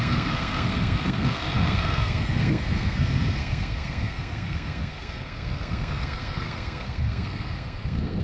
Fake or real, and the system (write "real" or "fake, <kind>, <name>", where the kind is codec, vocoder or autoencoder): fake, codec, SNAC